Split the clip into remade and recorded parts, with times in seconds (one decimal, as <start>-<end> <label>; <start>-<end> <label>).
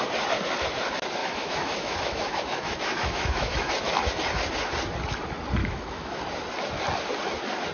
0.0-1.2 recorded; 1.2-3.7 remade; 3.7-5.6 recorded; 5.6-6.2 remade; 6.2-7.7 recorded